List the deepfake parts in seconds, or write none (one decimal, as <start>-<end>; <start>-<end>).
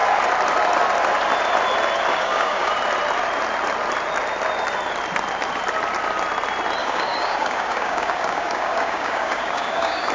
2.1-2.7; 6.8-10.1